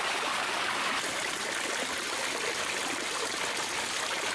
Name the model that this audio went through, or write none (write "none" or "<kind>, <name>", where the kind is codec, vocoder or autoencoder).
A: none